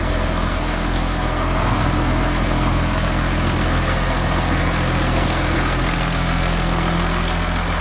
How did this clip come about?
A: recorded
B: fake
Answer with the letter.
B